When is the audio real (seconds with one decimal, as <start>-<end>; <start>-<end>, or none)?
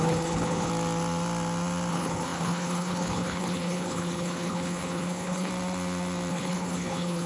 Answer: 0.7-1.9; 5.5-6.3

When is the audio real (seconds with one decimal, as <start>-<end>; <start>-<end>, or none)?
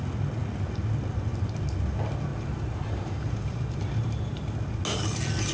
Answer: 0.0-2.3; 4.5-5.5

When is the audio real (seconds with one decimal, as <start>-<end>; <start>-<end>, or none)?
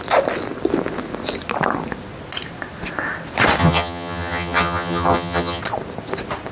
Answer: 0.0-3.6; 5.6-6.5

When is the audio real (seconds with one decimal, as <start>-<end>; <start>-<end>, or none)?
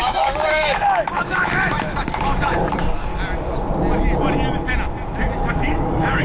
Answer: 3.1-5.5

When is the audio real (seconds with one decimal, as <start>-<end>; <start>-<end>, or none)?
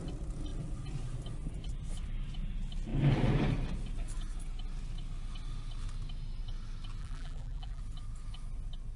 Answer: 0.0-7.0; 7.8-9.0